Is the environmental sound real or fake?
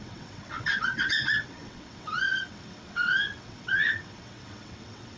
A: fake